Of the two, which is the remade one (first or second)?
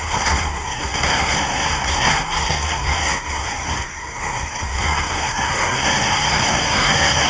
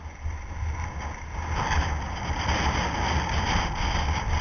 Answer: first